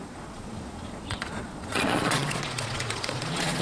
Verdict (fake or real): fake